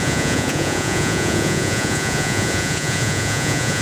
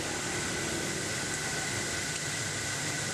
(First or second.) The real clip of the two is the second